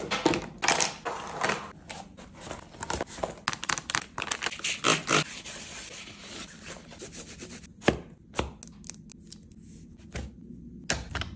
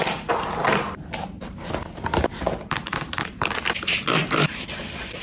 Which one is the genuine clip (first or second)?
first